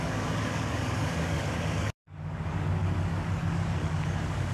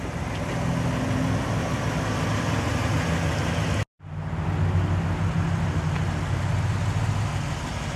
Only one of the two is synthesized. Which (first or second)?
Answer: first